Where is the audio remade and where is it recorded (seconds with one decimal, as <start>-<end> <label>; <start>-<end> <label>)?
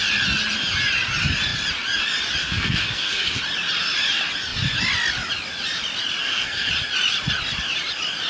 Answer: 0.0-2.4 recorded; 2.4-3.4 remade; 3.4-6.2 recorded; 6.2-6.7 remade; 6.7-8.3 recorded